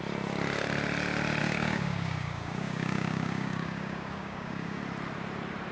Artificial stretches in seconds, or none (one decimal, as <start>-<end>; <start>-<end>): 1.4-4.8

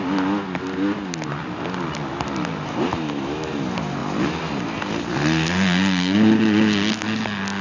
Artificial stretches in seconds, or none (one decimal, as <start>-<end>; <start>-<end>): none

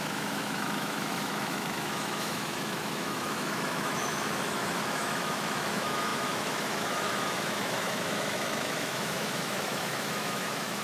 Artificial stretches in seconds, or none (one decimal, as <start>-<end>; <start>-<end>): 0.0-10.8

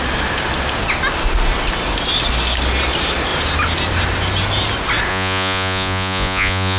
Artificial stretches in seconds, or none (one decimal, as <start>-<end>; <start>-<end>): 5.1-6.8

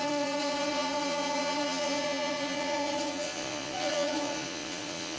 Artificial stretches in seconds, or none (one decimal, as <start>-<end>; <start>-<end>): 0.0-5.2

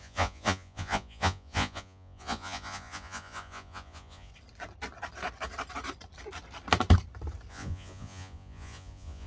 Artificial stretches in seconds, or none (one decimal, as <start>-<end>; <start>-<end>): 0.0-4.3; 7.5-9.3

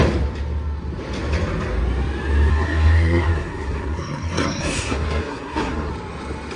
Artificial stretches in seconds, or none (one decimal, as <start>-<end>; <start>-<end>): 2.5-5.9